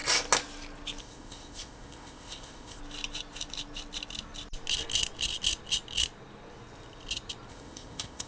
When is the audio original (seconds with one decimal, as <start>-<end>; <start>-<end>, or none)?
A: 0.0-1.0; 2.8-7.5